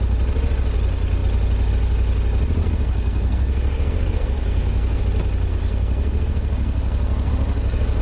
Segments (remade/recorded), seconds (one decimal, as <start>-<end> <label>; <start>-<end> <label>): 0.0-2.6 recorded; 2.6-5.0 remade; 5.0-5.5 recorded; 5.5-7.3 remade; 7.3-8.0 recorded